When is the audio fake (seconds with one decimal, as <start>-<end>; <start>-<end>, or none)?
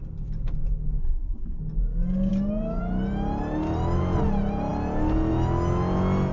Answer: 1.0-1.6